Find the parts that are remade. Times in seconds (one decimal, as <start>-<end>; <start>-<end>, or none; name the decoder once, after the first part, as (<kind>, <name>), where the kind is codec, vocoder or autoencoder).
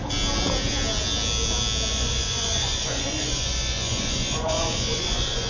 1.9-5.5 (vocoder, Vocos)